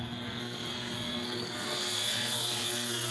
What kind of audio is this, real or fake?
fake